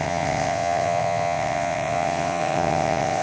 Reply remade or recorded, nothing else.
remade